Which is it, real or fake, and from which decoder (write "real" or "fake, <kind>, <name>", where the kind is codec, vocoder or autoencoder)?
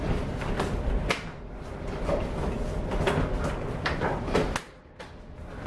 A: real